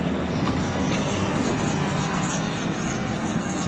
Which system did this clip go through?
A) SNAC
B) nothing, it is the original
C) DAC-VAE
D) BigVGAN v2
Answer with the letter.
A